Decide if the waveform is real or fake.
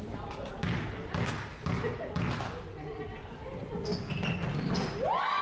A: real